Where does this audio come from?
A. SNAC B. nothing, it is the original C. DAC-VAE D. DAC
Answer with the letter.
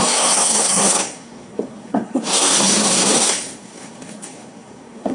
A